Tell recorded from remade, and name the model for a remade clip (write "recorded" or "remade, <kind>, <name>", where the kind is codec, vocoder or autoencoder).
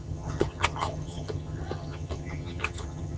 remade, vocoder, HiFi-GAN